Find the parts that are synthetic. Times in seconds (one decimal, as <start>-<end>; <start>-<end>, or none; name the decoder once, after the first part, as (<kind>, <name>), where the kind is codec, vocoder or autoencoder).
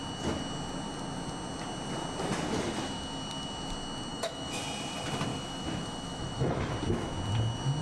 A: 4.1-4.6 (autoencoder, DAC-VAE); 5.3-6.7